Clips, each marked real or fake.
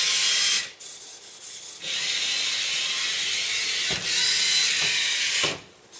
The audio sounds real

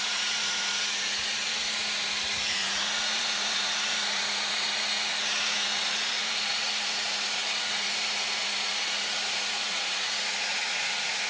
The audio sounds fake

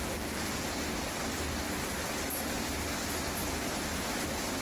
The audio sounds real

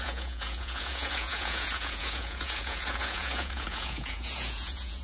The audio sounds fake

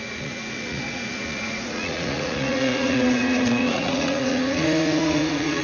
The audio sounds fake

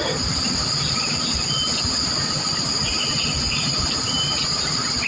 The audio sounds real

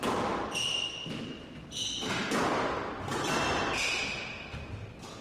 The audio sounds real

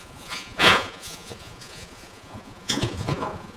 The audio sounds fake